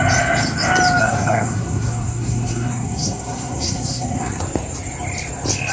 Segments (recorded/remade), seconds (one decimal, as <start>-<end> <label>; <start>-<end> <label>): 0.0-1.0 recorded; 1.0-4.4 remade; 4.4-5.7 recorded

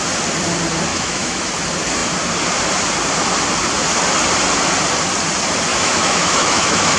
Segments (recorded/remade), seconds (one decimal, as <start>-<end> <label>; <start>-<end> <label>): 0.0-0.9 recorded; 0.9-1.5 remade; 1.5-5.7 recorded; 5.7-7.0 remade

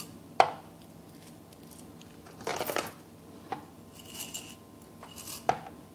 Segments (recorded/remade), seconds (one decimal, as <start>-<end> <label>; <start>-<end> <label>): 0.0-5.9 recorded

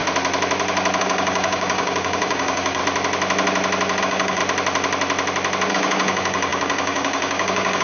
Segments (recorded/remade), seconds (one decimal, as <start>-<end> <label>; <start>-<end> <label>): 0.0-1.0 recorded; 1.0-2.8 remade; 2.8-4.0 recorded; 4.0-4.4 remade; 4.4-5.7 recorded; 5.7-7.8 remade